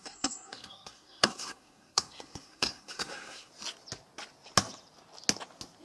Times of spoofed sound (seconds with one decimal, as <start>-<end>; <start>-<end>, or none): 0.0-3.5